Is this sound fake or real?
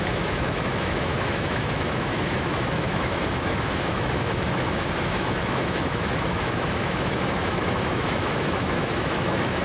fake